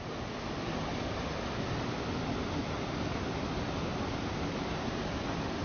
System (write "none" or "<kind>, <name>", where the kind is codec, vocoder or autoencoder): none